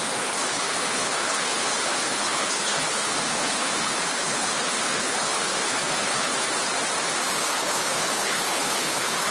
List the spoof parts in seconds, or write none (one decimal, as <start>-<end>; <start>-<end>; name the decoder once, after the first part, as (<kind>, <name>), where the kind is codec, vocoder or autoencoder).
0.0-6.3 (codec, HILCodec); 7.3-9.3